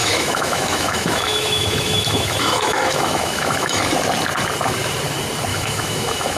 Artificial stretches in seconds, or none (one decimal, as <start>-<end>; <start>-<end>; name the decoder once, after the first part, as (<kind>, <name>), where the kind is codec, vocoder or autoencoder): 0.0-3.8 (autoencoder, DAC-VAE); 5.5-6.4

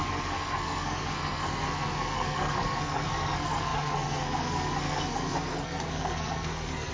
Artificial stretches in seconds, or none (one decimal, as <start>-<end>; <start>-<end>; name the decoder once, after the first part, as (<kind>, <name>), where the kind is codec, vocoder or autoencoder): 0.0-6.9 (codec, SNAC)

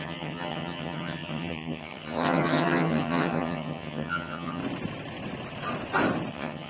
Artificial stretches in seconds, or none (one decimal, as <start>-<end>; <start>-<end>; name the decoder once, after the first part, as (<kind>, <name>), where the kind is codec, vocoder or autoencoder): 0.0-4.6 (vocoder, HiFi-GAN); 6.3-6.7

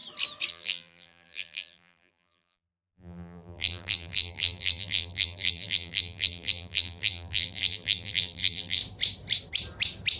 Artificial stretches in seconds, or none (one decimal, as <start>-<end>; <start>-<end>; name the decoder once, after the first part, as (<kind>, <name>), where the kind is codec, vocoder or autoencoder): 0.5-8.8 (vocoder, BigVGAN v2)